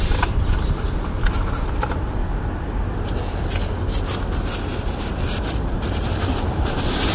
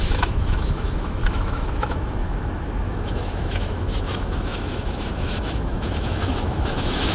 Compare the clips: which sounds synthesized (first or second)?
second